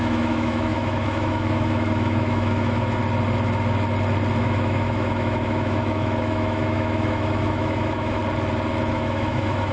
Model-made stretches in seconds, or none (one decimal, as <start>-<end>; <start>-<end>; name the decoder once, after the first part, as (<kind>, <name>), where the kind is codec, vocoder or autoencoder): 0.0-3.0 (autoencoder, DAC-VAE); 4.4-8.2; 8.9-9.7